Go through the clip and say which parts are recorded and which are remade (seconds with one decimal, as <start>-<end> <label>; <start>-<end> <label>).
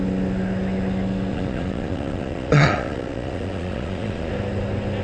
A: 0.0-1.3 recorded; 1.3-4.3 remade; 4.3-5.0 recorded